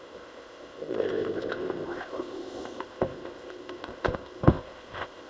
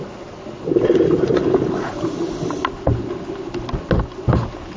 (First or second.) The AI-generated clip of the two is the first